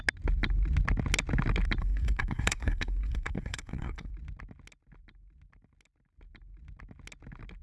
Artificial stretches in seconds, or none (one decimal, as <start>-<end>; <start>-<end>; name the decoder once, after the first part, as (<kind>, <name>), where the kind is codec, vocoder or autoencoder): 1.8-4.1 (codec, SNAC)